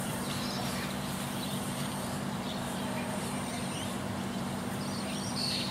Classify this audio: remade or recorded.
remade